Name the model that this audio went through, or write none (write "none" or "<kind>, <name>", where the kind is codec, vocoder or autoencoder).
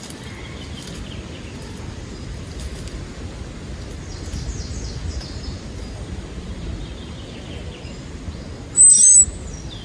none